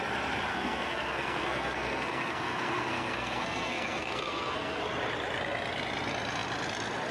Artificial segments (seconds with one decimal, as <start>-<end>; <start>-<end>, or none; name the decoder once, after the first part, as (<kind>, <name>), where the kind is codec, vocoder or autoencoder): 0.5-4.8 (codec, SNAC)